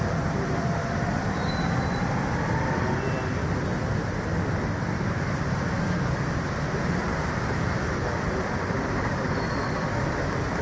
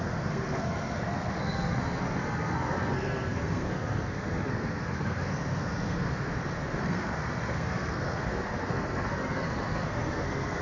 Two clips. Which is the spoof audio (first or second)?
second